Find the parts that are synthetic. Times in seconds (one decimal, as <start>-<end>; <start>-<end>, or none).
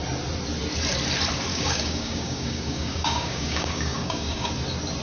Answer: 1.5-4.5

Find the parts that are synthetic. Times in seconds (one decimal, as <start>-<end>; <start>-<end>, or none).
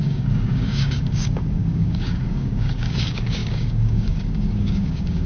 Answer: 0.0-5.3